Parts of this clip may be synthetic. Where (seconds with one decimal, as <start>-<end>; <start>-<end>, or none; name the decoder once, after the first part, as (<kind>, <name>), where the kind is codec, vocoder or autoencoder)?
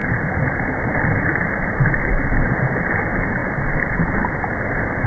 0.0-2.5 (vocoder, BigVGAN v2)